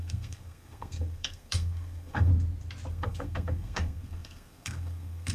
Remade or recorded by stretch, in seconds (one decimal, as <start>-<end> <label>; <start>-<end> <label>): 0.0-2.3 remade; 2.3-2.9 recorded; 2.9-5.3 remade